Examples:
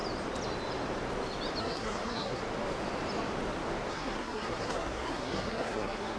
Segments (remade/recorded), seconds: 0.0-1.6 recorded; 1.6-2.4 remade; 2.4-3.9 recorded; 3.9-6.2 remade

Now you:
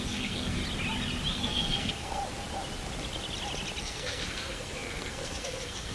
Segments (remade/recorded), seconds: 0.0-0.6 remade; 0.6-1.3 recorded; 1.3-2.2 remade; 2.2-3.8 recorded; 3.8-5.9 remade

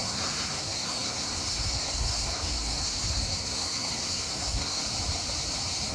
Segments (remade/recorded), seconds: 0.0-4.8 remade; 4.8-5.9 recorded

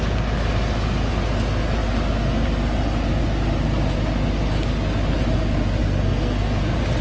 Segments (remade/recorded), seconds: 0.0-5.8 recorded; 5.8-6.6 remade; 6.6-7.0 recorded